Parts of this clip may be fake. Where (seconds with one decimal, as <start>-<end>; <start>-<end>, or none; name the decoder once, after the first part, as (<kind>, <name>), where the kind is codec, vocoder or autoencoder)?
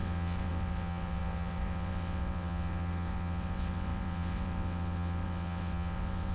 0.0-6.3 (vocoder, WaveNeXt)